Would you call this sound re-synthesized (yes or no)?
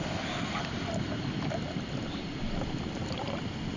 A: no